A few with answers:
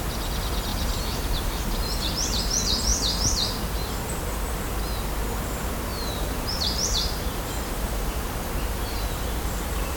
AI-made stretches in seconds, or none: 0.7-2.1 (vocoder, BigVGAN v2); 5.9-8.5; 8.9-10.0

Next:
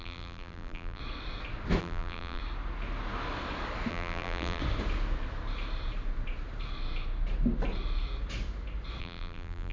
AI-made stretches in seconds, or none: 0.0-1.0 (vocoder, BigVGAN v2); 1.8-2.4; 3.9-4.6; 9.0-9.7

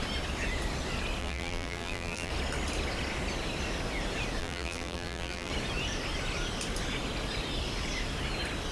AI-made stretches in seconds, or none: 1.2-2.3 (vocoder, BigVGAN v2); 4.4-5.5

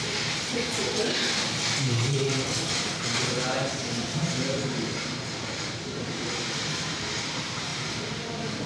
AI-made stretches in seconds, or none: 0.0-0.8 (vocoder, BigVGAN v2); 3.2-7.7

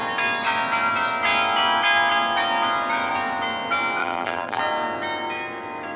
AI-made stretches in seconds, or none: 4.0-4.6 (vocoder, BigVGAN v2)

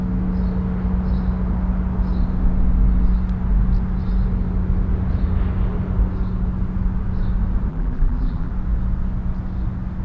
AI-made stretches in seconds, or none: 7.7-8.5 (vocoder, BigVGAN v2)

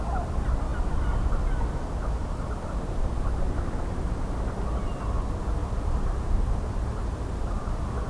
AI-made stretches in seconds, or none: 2.2-4.0 (vocoder, BigVGAN v2); 5.6-6.2

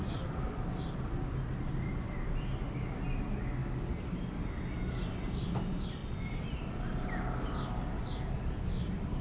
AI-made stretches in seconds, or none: 0.0-3.6 (vocoder, BigVGAN v2); 4.8-6.0; 8.6-9.2